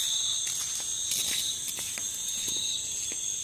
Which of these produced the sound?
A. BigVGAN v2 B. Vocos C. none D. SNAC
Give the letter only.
C